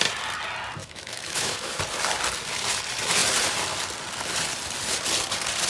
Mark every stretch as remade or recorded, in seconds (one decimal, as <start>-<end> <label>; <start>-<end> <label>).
0.0-0.8 recorded; 0.8-1.8 remade; 1.8-5.7 recorded